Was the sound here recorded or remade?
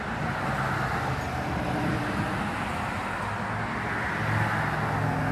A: recorded